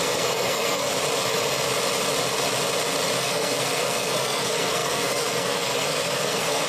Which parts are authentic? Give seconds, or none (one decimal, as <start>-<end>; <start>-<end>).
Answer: 0.9-3.2